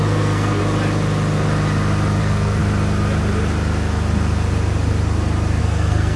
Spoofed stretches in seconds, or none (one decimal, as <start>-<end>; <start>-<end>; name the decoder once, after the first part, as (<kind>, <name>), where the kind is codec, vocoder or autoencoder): 0.0-0.6 (codec, SNAC); 2.2-2.6; 5.6-6.2